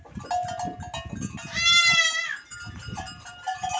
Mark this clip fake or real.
real